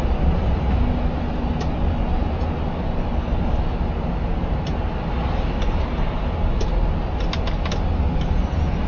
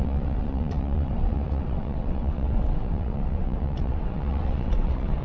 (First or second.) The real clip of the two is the first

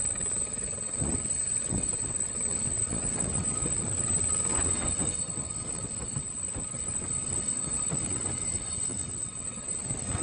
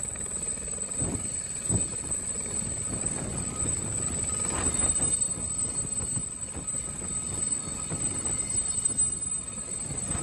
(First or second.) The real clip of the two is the second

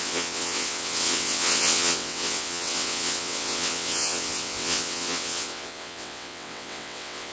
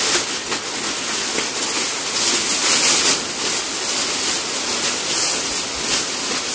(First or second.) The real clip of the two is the second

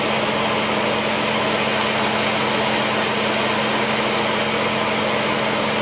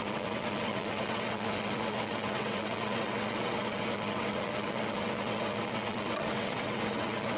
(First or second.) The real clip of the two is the first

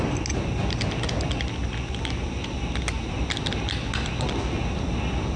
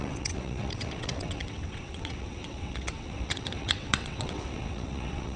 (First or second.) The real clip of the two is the first